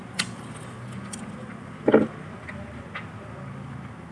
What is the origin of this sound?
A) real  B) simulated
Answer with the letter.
A